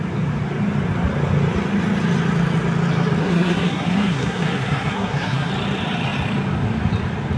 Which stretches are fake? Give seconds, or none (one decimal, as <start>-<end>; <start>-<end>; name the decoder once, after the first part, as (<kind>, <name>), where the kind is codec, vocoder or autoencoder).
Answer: 3.2-5.5 (codec, SNAC)

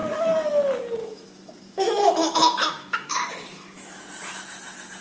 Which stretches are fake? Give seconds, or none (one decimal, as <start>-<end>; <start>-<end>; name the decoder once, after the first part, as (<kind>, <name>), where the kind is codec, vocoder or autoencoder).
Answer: 1.0-4.0 (autoencoder, DAC-VAE)

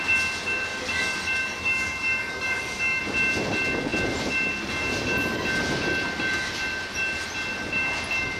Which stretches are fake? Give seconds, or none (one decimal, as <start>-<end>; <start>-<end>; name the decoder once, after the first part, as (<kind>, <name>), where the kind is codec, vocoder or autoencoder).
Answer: 0.7-3.0 (codec, DAC)

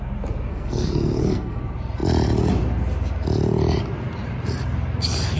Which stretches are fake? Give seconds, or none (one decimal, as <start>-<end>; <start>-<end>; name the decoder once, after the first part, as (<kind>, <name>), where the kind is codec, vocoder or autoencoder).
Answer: 0.5-1.6 (codec, SNAC)

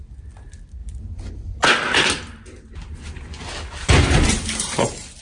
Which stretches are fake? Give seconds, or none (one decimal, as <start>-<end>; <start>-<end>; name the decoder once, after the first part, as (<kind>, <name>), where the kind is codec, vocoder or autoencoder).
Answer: none

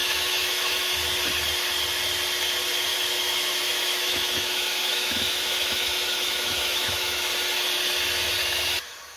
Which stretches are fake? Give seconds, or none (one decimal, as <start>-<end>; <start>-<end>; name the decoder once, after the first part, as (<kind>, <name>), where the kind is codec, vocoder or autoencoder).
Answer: 0.0-1.0 (autoencoder, DAC-VAE); 2.9-7.3; 8.4-9.2

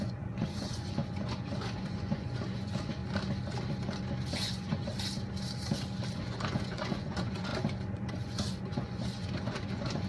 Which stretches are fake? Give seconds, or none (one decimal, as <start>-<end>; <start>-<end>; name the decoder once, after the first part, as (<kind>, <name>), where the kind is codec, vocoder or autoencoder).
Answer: 0.0-3.0 (vocoder, Vocos); 4.3-4.9; 6.1-7.5; 8.1-10.1